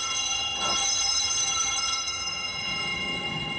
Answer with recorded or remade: remade